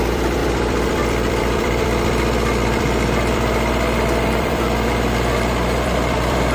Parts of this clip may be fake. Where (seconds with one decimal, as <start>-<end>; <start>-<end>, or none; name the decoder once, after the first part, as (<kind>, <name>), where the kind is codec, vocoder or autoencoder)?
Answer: 0.0-6.5 (vocoder, BigVGAN v2)